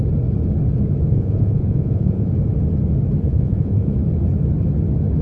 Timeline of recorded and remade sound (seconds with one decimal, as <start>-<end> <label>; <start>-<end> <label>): 0.0-1.1 recorded; 1.1-2.3 remade; 2.3-3.3 recorded; 3.3-3.9 remade; 3.9-5.2 recorded

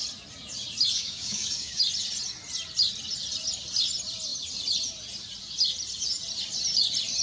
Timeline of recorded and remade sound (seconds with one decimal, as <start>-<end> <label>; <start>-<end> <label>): 0.0-0.9 recorded; 0.9-1.8 remade; 1.8-7.2 recorded

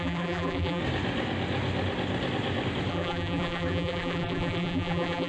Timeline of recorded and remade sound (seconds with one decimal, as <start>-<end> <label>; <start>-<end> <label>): 0.0-0.8 remade; 0.8-2.9 recorded; 2.9-5.3 remade

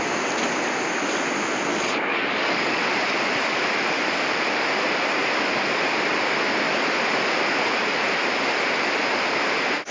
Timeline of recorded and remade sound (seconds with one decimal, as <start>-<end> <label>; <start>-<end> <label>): 0.0-1.7 recorded; 1.7-2.8 remade; 2.8-9.9 recorded

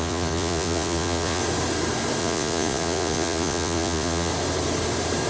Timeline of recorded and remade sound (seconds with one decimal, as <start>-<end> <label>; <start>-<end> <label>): 0.0-1.4 remade; 1.4-2.2 recorded; 2.2-4.3 remade; 4.3-5.3 recorded